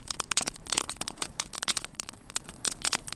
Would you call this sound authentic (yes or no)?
no